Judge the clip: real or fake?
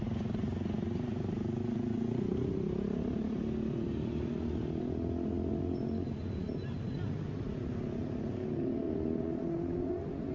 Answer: real